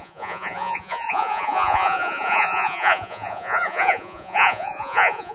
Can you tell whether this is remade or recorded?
remade